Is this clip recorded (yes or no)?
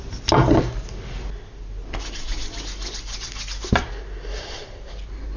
yes